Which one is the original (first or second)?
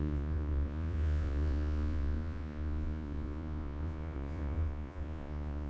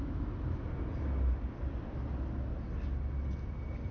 second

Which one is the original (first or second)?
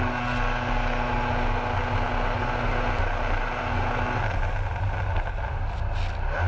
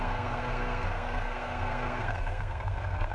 first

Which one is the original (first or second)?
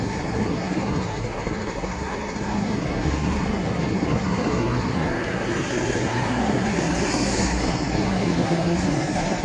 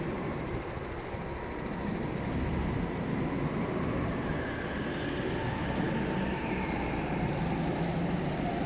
second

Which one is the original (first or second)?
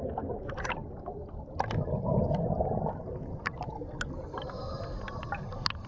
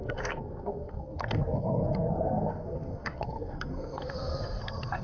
first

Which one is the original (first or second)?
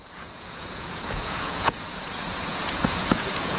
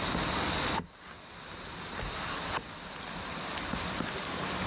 second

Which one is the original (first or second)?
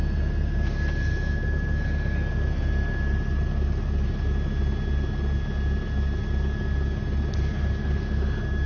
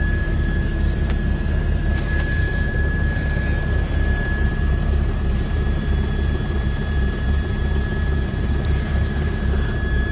first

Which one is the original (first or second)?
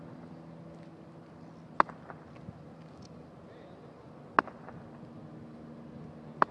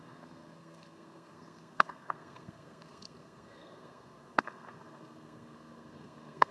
first